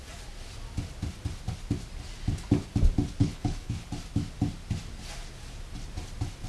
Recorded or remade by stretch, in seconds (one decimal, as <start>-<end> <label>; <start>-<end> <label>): 0.0-3.2 recorded; 3.2-3.9 remade; 3.9-6.5 recorded